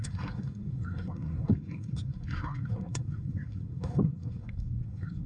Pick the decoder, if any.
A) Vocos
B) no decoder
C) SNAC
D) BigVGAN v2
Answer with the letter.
C